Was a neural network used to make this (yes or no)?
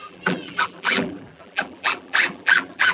yes